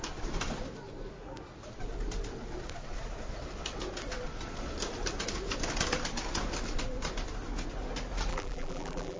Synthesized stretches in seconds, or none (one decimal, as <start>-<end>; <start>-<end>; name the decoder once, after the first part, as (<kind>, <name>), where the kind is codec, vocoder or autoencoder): 8.3-9.2 (vocoder, BigVGAN v2)